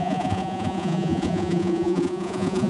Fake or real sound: fake